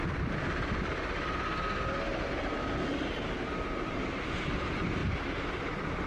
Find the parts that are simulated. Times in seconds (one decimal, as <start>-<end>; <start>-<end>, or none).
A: 0.8-2.1; 3.8-6.1